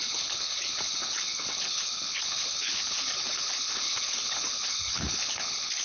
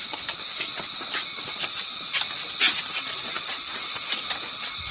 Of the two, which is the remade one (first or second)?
first